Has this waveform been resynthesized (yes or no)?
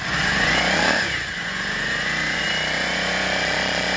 yes